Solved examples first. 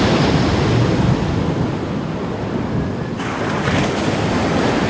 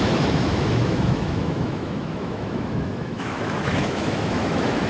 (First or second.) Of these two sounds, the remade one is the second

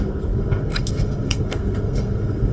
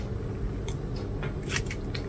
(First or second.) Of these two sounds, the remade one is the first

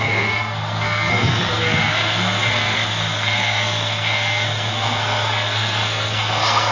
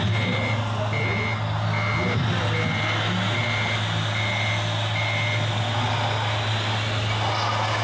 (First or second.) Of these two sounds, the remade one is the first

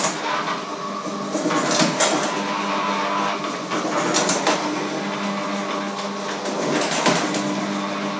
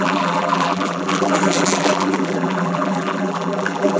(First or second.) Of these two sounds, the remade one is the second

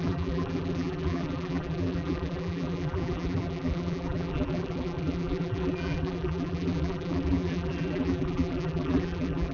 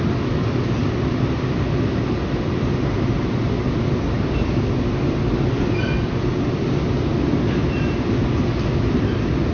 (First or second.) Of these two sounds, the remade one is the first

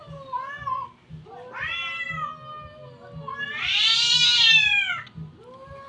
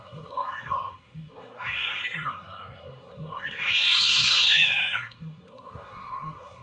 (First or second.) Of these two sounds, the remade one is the second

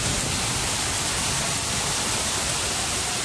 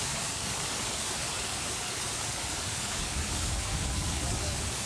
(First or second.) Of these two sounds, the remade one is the second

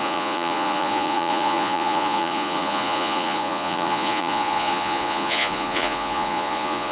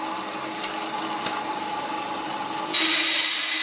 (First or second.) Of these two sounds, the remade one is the first